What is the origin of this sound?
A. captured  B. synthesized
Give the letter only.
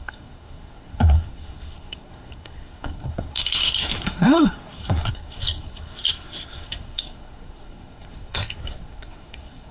B